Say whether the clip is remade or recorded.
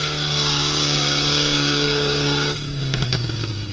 remade